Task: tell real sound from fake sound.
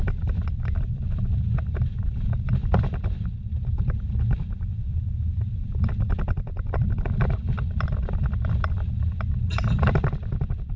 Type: real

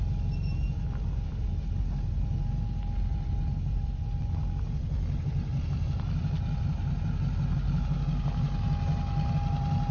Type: real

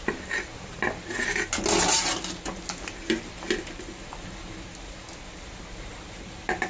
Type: real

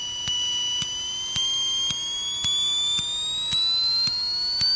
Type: real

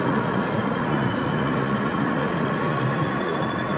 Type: fake